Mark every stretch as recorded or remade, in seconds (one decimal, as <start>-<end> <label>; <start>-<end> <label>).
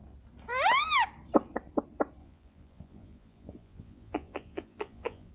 0.0-2.2 recorded; 2.2-5.3 remade